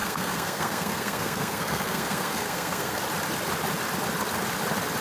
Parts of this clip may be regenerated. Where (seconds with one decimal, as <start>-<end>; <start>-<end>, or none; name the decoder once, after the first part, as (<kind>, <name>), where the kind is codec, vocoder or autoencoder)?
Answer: 0.0-3.0 (codec, SNAC)